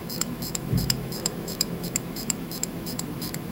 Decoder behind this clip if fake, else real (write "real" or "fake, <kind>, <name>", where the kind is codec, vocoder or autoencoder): fake, autoencoder, DAC-VAE